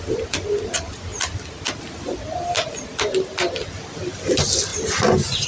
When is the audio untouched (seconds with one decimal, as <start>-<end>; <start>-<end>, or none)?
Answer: 0.0-2.9; 4.3-4.7